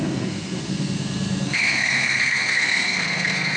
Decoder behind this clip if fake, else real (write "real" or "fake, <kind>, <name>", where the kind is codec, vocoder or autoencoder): fake, codec, SNAC